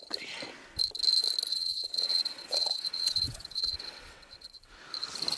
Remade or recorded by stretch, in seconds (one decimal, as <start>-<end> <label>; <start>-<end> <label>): 0.0-1.5 recorded; 1.5-4.7 remade; 4.7-5.4 recorded